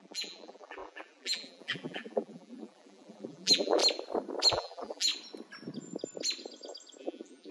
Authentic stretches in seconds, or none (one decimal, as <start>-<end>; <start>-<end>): 3.8-4.5; 5.1-7.0